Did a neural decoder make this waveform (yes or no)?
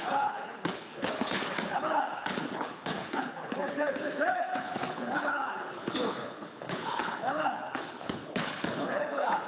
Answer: yes